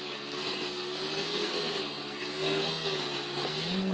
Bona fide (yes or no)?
no